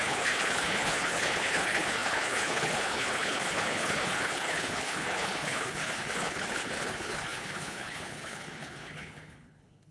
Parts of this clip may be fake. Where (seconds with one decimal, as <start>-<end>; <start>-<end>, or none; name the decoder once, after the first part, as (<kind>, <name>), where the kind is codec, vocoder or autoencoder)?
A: 0.0-9.9 (codec, HILCodec)